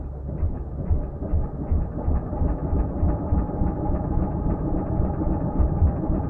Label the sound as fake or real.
real